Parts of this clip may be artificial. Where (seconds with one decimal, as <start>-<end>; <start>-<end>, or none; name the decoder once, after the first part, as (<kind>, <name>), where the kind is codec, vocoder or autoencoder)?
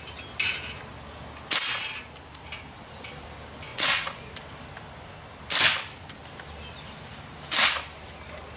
3.7-4.3 (vocoder, Vocos)